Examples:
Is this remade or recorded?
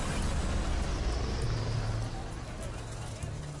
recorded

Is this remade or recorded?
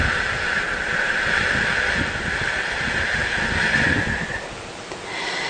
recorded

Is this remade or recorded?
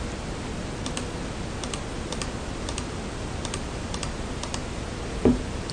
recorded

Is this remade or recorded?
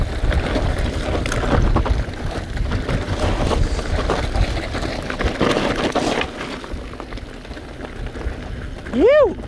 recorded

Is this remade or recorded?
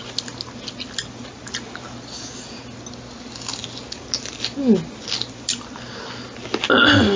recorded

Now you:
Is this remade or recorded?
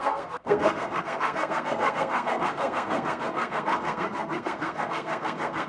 remade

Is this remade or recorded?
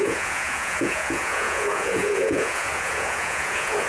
remade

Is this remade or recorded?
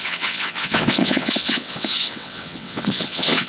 remade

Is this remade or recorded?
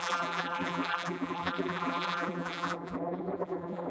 remade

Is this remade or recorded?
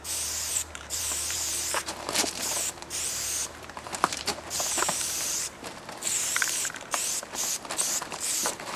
remade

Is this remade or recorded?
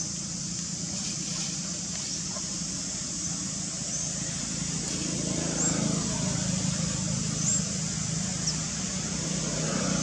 recorded